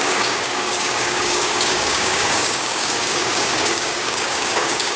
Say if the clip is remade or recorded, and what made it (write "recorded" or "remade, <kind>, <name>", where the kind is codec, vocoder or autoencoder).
remade, codec, DAC